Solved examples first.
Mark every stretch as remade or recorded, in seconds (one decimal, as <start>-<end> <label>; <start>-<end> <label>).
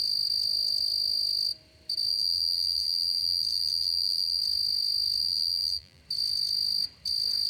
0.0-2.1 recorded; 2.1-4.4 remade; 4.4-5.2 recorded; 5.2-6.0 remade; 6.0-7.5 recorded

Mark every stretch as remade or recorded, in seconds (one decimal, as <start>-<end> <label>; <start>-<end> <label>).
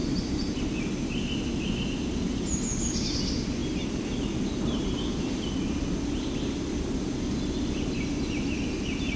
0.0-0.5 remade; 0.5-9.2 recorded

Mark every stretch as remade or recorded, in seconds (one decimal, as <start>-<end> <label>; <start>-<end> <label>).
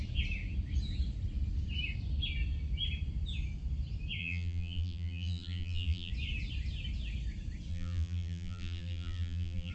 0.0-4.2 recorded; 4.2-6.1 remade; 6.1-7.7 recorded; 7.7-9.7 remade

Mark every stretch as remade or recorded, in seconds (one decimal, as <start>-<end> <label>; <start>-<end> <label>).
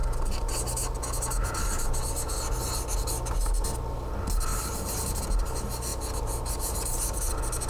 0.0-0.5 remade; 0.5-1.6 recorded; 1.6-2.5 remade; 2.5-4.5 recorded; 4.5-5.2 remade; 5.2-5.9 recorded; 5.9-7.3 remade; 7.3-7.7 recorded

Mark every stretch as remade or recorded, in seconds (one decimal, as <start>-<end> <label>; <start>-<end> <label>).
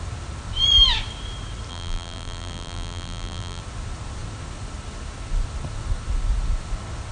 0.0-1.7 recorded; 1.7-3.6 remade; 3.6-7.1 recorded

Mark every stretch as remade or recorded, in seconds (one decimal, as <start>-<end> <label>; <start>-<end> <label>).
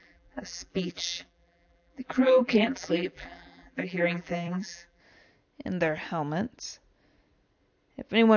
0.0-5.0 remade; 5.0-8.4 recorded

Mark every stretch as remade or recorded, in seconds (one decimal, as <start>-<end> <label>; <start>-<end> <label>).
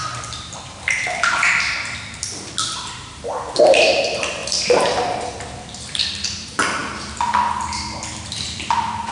0.0-4.4 remade; 4.4-5.8 recorded; 5.8-9.1 remade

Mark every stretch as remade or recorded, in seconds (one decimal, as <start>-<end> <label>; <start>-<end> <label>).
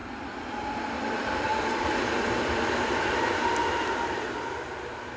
0.0-0.7 recorded; 0.7-5.2 remade